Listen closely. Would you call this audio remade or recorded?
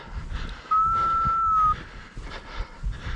recorded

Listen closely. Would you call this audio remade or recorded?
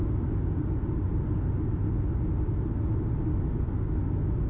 recorded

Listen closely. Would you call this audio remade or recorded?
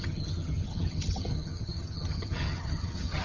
remade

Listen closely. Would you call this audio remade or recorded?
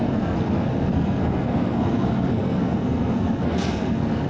remade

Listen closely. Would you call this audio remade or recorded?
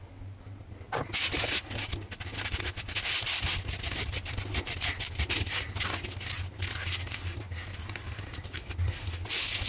recorded